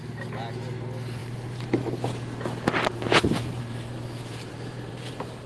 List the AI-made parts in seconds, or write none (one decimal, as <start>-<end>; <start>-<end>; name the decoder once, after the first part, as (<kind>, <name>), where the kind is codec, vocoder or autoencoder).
none